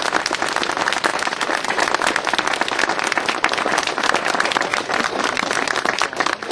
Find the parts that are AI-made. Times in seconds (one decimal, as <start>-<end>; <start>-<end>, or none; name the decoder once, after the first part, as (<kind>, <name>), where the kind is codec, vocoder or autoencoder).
1.1-1.9 (vocoder, BigVGAN v2); 4.7-6.0